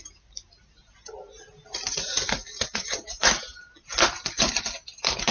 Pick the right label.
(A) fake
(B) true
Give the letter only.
B